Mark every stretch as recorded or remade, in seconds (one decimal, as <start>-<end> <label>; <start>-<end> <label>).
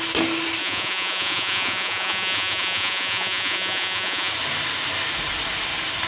0.0-0.6 recorded; 0.6-4.3 remade; 4.3-6.1 recorded